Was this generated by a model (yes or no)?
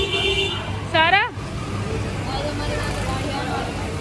no